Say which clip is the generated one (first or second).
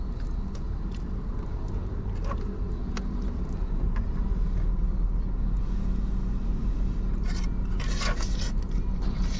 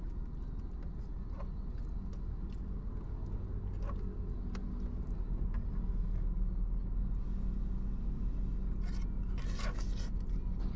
first